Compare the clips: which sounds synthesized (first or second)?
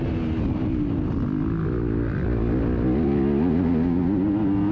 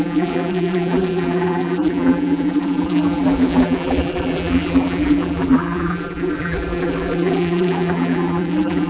second